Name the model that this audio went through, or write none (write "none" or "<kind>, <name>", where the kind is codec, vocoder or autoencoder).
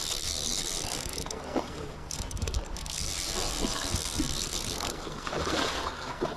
codec, SNAC